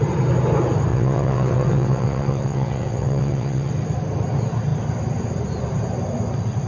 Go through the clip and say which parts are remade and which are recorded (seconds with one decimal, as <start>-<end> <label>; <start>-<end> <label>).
0.0-0.9 recorded; 0.9-3.7 remade; 3.7-6.7 recorded